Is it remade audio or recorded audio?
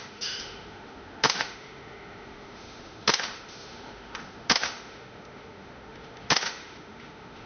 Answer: remade